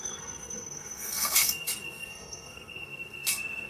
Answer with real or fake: fake